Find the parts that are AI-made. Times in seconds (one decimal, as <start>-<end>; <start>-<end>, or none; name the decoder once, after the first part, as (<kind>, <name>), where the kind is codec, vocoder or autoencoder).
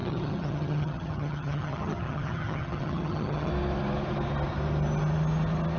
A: 0.0-3.5 (vocoder, HiFi-GAN)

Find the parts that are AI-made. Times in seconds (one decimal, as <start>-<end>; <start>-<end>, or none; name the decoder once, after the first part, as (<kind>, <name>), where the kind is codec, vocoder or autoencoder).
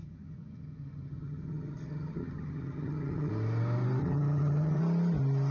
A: 0.0-3.3 (vocoder, HiFi-GAN); 4.0-4.8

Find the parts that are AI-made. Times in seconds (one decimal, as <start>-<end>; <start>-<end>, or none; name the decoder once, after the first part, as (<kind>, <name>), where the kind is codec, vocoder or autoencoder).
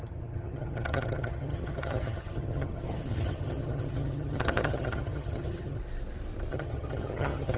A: 0.0-5.8 (vocoder, HiFi-GAN); 6.5-7.6